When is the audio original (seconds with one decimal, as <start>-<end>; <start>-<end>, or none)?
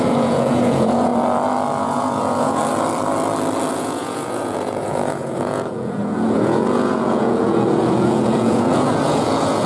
1.1-1.8; 2.6-3.7